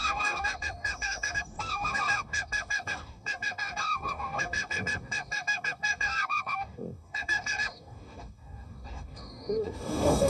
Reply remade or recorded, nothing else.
remade